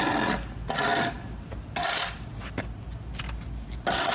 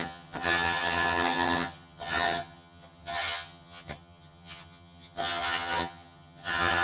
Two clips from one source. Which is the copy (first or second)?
second